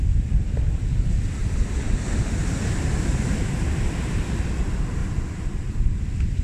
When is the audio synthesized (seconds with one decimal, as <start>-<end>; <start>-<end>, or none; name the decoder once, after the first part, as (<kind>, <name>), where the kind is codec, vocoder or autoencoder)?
5.0-5.6 (vocoder, BigVGAN v2)